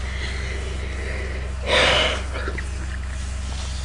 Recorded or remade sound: recorded